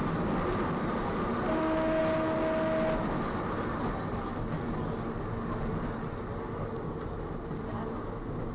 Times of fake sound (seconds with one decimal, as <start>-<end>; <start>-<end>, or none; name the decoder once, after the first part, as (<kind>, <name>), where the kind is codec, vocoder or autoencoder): none